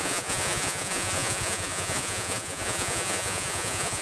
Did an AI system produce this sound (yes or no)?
yes